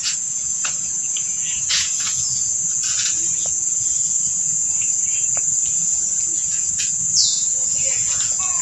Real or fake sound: fake